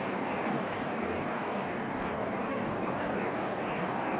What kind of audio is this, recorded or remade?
remade